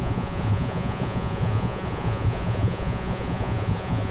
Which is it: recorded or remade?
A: remade